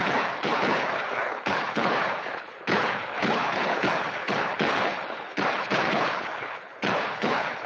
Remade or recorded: remade